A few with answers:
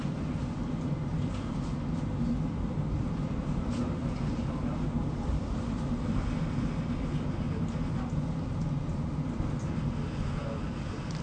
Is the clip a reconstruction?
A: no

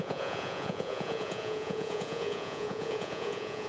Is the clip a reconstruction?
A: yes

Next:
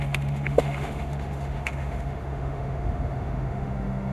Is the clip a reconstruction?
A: yes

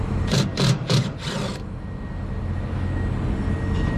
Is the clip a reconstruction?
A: no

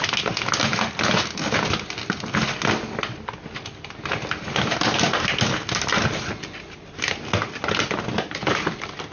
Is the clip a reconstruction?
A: no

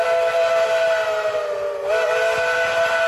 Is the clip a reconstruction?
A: no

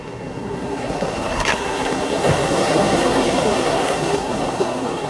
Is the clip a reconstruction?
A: yes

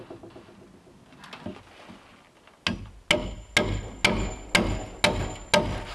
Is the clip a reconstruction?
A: no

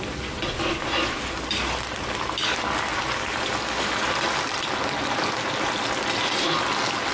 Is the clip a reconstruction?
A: no